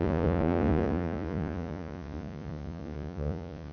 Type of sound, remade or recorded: remade